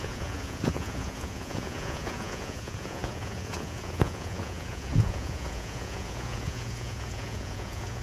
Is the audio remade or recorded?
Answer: remade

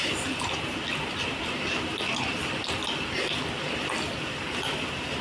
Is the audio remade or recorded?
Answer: recorded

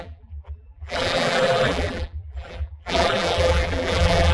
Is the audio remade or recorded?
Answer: remade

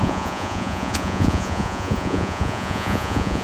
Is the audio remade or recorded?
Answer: remade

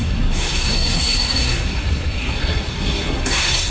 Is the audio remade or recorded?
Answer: remade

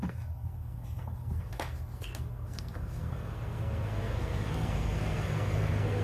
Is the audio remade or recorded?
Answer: remade